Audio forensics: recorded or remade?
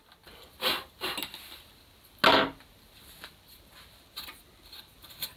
recorded